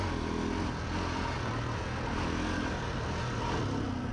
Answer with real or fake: real